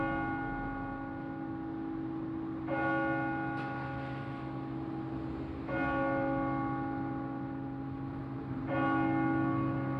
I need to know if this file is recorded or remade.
recorded